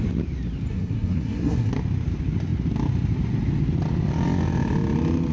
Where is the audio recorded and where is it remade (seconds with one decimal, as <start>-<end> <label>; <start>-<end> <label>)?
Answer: 0.0-0.7 recorded; 0.7-1.7 remade; 1.7-5.3 recorded